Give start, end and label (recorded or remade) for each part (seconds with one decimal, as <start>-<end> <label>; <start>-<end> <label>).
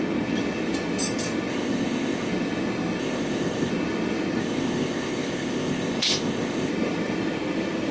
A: 0.0-1.5 recorded; 1.5-2.3 remade; 2.3-3.0 recorded; 3.0-3.7 remade; 3.7-4.4 recorded; 4.4-6.7 remade; 6.7-7.9 recorded